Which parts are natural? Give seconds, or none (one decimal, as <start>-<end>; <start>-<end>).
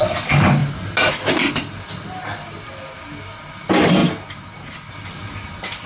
0.0-5.9